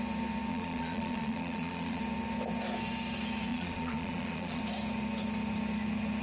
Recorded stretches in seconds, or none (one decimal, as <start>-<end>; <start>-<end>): 0.0-0.5; 2.0-3.5; 4.6-6.2